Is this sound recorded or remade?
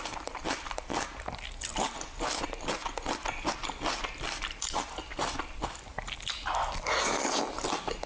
recorded